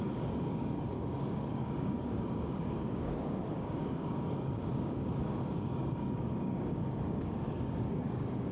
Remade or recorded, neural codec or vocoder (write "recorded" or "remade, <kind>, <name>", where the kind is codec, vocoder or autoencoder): remade, codec, DAC